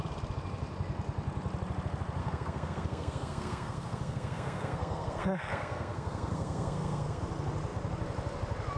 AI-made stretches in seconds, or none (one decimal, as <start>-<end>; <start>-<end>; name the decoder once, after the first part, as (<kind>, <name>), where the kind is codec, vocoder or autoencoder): 2.2-7.2 (codec, SNAC)